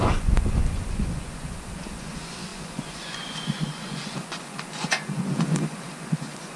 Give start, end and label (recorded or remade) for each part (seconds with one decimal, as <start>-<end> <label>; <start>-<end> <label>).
0.0-6.6 remade